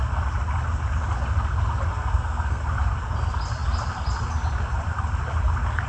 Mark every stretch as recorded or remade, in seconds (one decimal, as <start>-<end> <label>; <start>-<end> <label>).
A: 0.0-1.9 recorded; 1.9-2.6 remade; 2.6-5.9 recorded